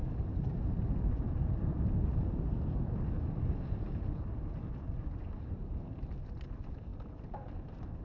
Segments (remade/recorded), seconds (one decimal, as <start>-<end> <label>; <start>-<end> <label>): 0.0-8.0 recorded